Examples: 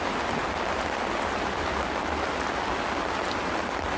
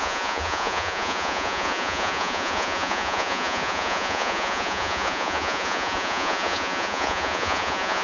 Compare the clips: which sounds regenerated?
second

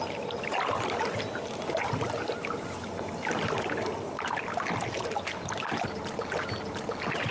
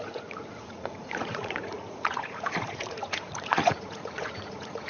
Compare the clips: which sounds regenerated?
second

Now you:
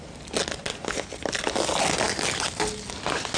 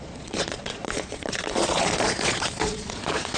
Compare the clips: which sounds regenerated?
second